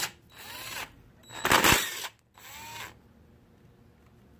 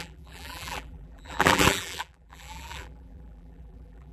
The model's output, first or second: second